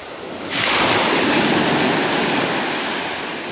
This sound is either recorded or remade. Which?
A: recorded